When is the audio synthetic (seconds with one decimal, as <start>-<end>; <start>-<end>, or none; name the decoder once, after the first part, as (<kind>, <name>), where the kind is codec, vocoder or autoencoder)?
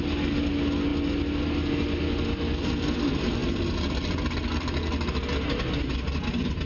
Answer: none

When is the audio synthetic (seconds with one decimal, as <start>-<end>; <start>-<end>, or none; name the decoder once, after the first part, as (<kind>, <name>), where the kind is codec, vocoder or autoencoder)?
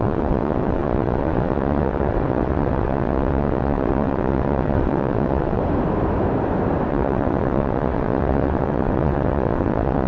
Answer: 0.0-5.6 (vocoder, WaveNeXt); 6.9-10.1